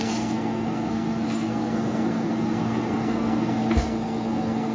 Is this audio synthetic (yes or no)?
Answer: yes